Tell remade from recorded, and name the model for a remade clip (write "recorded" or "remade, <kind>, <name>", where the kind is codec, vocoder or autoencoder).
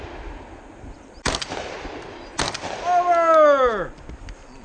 recorded